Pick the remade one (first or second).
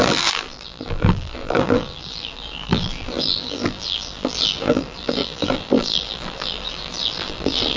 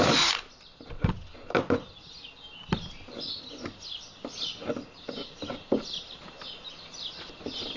first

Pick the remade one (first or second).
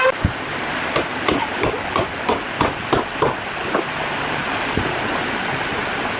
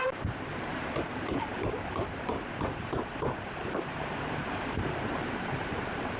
second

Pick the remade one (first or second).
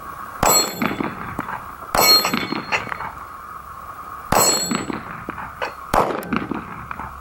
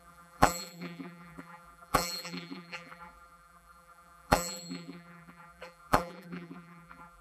second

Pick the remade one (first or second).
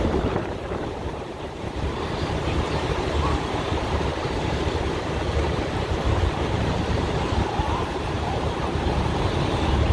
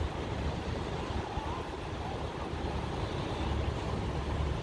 first